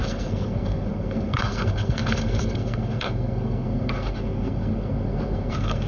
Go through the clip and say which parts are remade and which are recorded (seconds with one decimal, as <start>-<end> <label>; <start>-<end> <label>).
0.0-5.9 remade